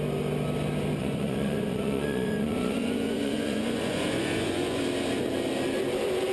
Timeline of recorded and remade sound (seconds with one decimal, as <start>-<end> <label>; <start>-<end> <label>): 0.0-1.0 recorded; 1.0-4.8 remade; 4.8-6.3 recorded